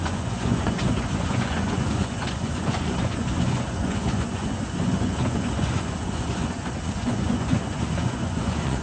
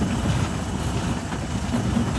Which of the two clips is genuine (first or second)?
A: second